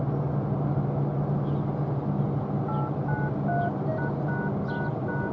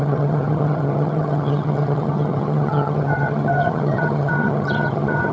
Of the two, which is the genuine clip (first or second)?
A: first